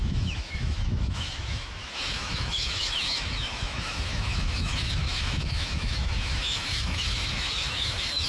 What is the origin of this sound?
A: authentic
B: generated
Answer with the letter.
B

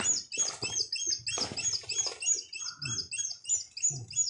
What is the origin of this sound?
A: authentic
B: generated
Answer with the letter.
A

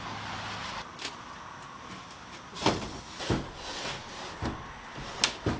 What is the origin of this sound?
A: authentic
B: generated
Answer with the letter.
A